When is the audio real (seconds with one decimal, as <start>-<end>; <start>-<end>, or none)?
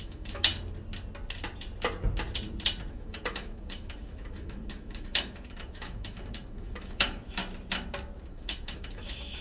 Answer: 0.5-2.9; 7.4-8.3